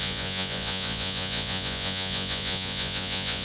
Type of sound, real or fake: fake